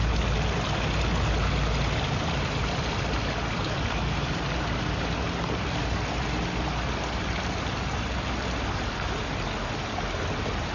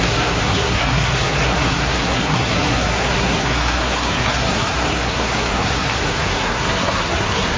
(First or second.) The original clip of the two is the first